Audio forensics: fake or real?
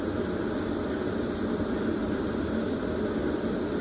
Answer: real